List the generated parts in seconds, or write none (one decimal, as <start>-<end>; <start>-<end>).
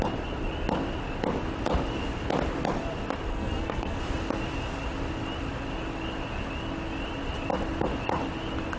3.3-4.0